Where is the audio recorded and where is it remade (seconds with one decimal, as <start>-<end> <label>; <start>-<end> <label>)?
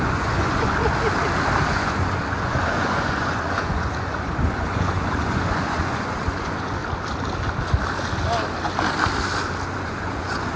0.0-0.8 remade; 0.8-1.7 recorded; 1.7-6.8 remade; 6.8-9.7 recorded; 9.7-10.6 remade